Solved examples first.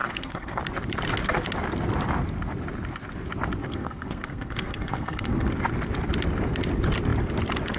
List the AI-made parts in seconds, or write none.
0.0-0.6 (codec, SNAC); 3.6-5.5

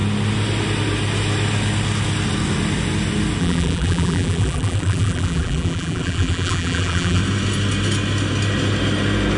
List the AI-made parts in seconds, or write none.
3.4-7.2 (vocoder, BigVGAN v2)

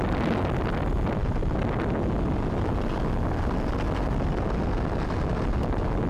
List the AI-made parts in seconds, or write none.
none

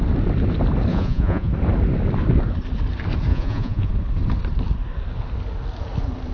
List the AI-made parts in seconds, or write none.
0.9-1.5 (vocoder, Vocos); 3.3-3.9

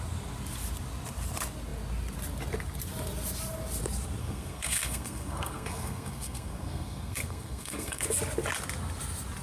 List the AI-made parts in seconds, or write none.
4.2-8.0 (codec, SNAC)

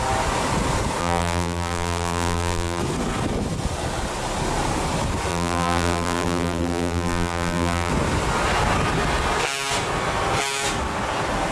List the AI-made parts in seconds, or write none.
1.0-2.8 (vocoder, BigVGAN v2); 5.3-7.9